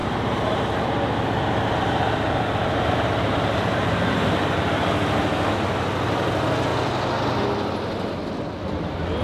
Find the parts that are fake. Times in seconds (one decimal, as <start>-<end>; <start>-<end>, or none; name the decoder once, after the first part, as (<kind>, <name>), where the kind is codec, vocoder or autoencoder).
0.0-0.6 (vocoder, BigVGAN v2); 1.8-4.8